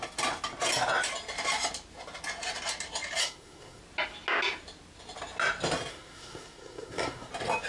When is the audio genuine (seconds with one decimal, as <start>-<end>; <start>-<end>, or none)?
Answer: 0.0-3.2; 3.8-5.9; 7.3-7.7